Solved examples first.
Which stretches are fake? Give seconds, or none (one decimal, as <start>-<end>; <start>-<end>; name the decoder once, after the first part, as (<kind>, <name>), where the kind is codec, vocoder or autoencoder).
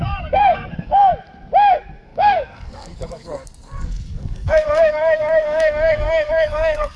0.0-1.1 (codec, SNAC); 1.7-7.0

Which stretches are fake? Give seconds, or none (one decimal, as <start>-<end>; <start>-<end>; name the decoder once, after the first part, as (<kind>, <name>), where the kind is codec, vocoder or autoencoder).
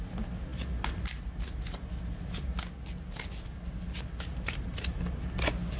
none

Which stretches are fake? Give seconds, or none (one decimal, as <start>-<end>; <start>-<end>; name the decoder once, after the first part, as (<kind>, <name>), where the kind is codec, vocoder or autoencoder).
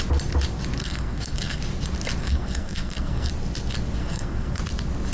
0.8-1.6 (codec, SNAC); 2.2-3.3; 4.0-4.6